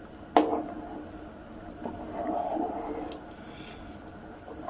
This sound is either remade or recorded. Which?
recorded